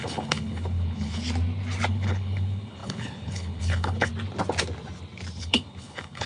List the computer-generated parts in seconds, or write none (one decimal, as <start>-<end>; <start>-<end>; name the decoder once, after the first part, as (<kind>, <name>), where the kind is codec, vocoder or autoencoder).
0.0-1.2 (codec, HILCodec); 1.9-4.1; 5.4-6.3